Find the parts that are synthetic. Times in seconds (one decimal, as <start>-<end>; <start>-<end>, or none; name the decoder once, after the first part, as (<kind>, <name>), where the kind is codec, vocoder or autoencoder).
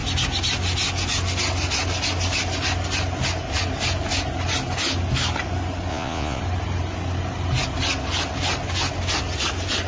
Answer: 5.9-6.4 (vocoder, Vocos)